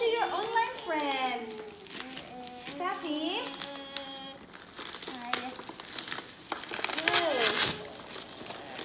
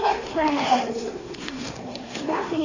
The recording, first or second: first